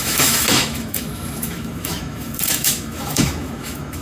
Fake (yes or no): yes